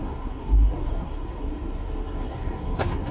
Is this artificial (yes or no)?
yes